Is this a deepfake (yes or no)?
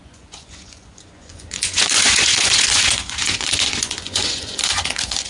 yes